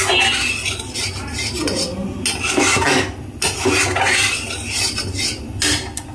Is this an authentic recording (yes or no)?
yes